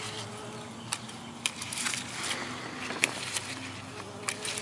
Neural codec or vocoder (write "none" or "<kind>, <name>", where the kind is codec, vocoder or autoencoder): none